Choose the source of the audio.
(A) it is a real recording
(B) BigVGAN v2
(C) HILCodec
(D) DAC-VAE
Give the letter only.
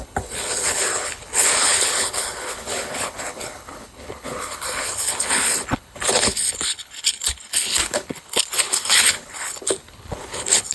C